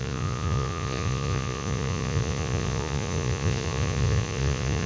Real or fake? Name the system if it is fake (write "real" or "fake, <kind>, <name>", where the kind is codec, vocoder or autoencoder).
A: fake, vocoder, Vocos